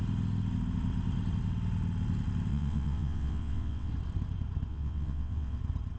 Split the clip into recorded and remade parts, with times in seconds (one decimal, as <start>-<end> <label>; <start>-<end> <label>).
0.0-2.5 recorded; 2.5-3.9 remade; 3.9-4.7 recorded; 4.7-5.6 remade; 5.6-6.0 recorded